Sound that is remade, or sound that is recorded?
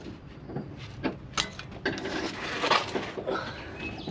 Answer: recorded